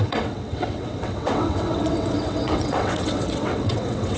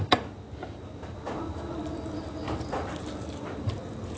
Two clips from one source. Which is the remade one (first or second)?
first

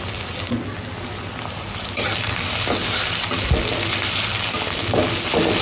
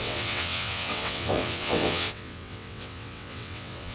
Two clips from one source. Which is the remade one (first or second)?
second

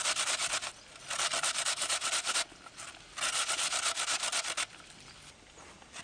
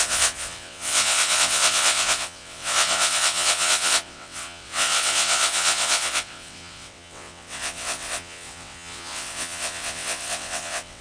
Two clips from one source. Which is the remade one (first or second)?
second